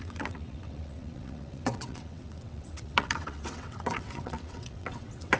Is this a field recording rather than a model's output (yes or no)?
no